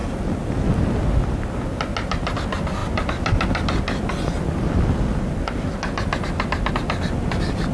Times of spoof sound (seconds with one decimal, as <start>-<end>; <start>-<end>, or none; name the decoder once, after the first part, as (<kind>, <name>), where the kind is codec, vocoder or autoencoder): none